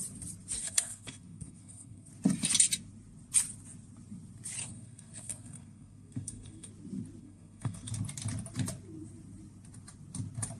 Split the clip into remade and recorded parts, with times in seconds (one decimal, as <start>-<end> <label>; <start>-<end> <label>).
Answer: 0.0-0.6 recorded; 0.6-2.1 remade; 2.1-4.6 recorded; 4.6-6.7 remade; 6.7-7.2 recorded; 7.2-7.9 remade; 7.9-10.6 recorded